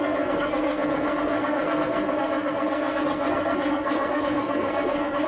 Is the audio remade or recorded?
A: remade